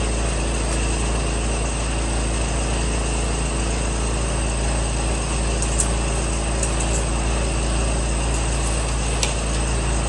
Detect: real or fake real